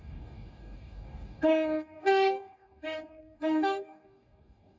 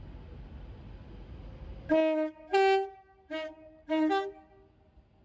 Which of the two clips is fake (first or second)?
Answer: first